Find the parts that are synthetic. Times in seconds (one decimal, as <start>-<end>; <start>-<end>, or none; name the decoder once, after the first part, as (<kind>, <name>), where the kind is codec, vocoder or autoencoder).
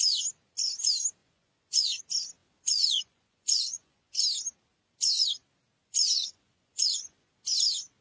1.2-2.0 (vocoder, Vocos); 2.4-4.2; 5.8-7.3